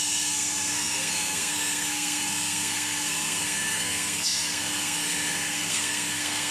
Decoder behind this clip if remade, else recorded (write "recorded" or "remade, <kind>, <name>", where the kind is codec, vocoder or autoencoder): remade, codec, SNAC